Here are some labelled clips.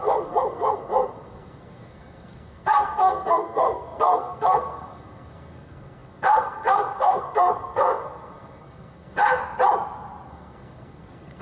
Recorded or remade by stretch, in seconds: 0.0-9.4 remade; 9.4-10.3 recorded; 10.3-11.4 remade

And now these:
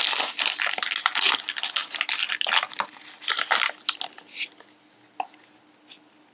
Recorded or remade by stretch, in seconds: 0.0-6.3 recorded

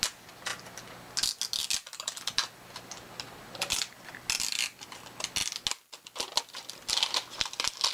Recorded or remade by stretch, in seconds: 0.0-7.9 recorded